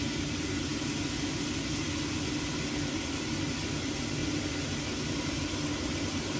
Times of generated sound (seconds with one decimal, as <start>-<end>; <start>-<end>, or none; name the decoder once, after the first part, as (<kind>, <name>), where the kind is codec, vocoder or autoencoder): none